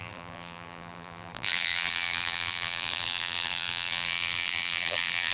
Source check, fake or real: fake